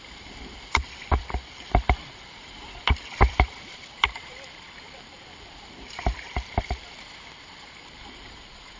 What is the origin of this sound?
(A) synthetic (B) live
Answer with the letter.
A